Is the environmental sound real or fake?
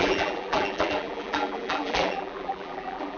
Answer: fake